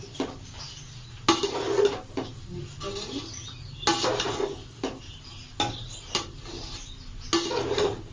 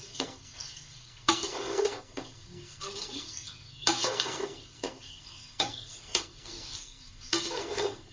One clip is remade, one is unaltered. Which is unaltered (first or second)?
first